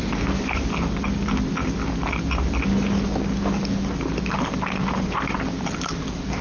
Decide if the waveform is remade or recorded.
recorded